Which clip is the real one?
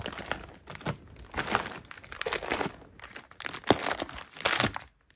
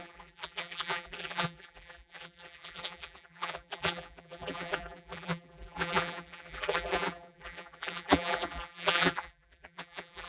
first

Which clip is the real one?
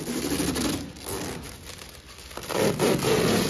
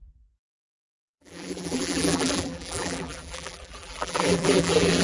first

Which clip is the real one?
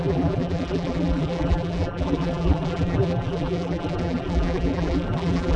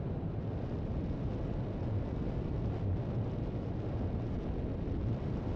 second